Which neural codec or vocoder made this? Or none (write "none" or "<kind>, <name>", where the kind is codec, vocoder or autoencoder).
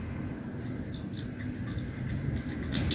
none